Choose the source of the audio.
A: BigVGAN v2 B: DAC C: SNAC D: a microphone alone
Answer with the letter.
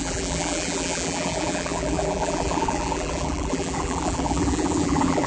A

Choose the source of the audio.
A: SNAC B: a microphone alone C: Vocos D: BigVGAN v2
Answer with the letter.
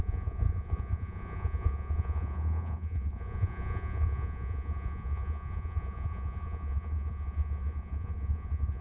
C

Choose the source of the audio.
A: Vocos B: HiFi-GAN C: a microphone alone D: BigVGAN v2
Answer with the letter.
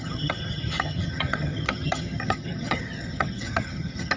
B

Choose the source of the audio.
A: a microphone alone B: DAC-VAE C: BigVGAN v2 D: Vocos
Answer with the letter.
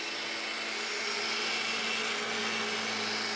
A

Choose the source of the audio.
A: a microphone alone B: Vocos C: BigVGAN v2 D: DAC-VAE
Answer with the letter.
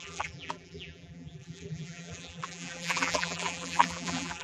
C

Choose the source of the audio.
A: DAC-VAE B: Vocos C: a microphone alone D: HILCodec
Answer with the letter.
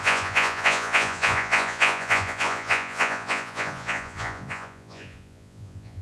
B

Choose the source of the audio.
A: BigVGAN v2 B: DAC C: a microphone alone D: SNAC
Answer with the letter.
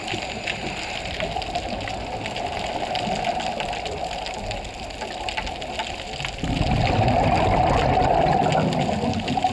C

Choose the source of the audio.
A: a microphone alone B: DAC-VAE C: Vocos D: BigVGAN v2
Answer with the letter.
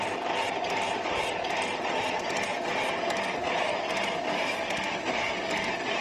A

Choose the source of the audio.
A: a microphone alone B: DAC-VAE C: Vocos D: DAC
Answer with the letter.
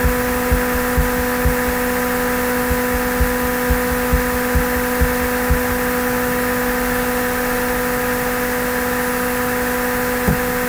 A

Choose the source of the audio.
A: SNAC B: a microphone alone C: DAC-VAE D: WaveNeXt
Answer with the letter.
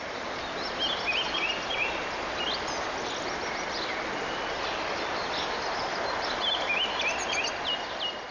B